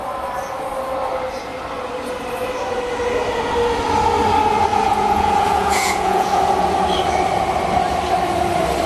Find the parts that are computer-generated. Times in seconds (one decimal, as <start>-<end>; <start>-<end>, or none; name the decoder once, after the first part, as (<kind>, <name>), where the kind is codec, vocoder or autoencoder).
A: 4.7-6.4 (vocoder, Vocos)